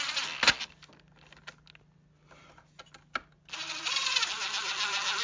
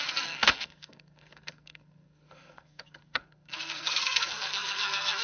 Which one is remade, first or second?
second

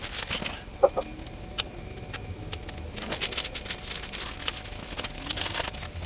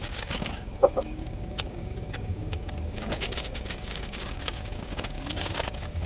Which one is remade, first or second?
second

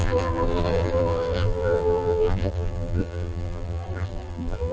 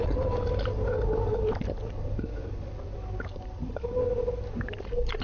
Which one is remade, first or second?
first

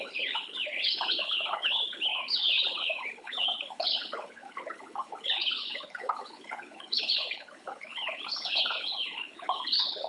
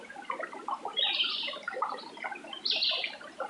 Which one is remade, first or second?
first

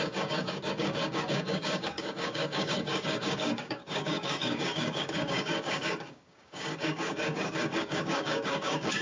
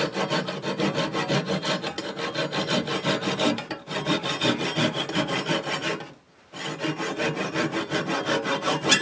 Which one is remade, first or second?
first